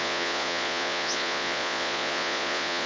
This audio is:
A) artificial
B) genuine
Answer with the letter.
A